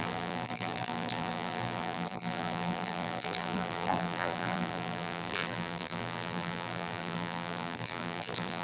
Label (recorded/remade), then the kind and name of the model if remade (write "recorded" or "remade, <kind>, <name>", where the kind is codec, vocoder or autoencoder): remade, vocoder, BigVGAN v2